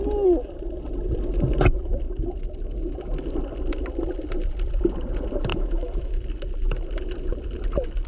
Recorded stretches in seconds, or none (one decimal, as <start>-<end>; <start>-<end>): 0.0-5.5; 6.2-8.1